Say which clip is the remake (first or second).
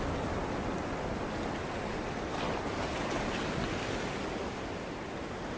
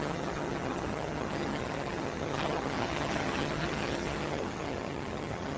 second